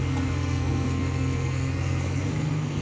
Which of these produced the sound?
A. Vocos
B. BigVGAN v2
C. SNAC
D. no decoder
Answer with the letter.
C